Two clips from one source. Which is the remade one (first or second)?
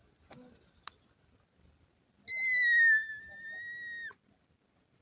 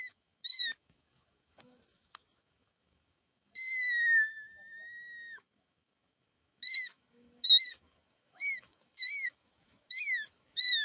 second